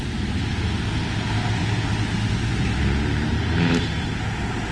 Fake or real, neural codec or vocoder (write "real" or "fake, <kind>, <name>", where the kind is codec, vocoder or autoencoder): real